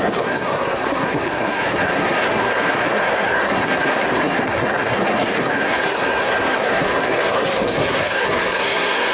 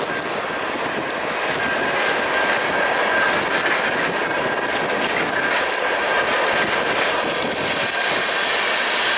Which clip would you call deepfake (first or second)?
first